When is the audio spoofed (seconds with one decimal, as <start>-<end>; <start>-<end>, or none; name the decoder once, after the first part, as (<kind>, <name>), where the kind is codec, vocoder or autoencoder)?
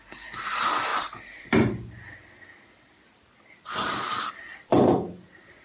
none